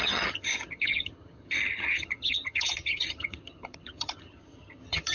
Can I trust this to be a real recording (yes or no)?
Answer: no